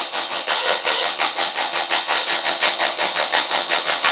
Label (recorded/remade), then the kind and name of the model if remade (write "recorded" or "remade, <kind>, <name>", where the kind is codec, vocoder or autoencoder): remade, vocoder, HiFi-GAN